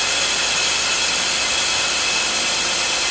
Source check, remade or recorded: recorded